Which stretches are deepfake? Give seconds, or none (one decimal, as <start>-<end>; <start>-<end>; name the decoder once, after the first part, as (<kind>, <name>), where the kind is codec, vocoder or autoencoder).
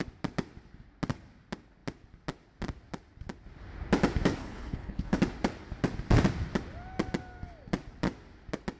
4.4-5.2 (codec, HILCodec)